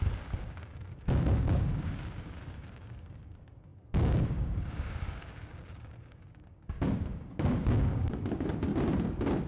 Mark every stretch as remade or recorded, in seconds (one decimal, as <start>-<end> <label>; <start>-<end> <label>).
0.0-8.7 remade; 8.7-9.5 recorded

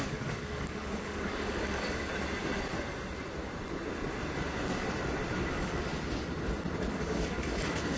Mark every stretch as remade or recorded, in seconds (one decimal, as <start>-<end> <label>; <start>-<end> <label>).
0.0-2.1 remade; 2.1-5.5 recorded; 5.5-5.9 remade; 5.9-6.9 recorded; 6.9-8.0 remade

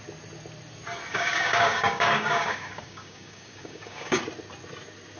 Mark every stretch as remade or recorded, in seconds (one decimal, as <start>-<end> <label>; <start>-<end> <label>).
0.0-1.1 recorded; 1.1-4.2 remade; 4.2-5.2 recorded